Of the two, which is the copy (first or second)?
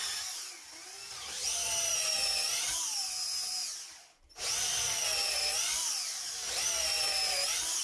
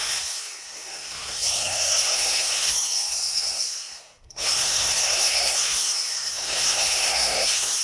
second